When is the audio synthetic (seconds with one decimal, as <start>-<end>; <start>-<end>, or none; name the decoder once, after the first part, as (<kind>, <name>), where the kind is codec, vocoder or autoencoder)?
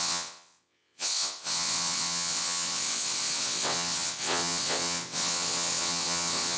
0.0-6.6 (vocoder, WaveNeXt)